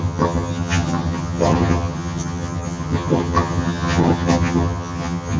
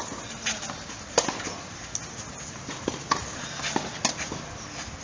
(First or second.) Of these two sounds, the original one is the second